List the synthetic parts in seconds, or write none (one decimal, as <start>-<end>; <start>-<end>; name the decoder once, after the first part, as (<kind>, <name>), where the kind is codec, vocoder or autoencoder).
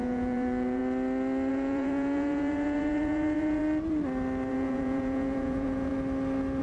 0.0-0.8 (vocoder, Vocos); 1.5-3.6; 4.5-5.9